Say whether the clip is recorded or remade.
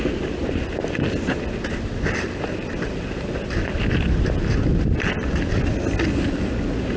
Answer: recorded